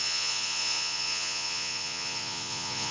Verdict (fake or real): fake